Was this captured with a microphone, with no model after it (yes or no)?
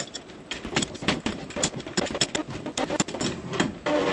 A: yes